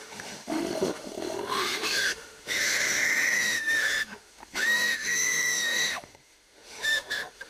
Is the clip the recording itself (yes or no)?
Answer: no